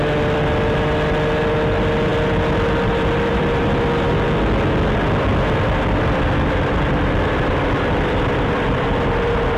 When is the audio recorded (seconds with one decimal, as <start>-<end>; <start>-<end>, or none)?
0.0-2.1; 4.1-5.3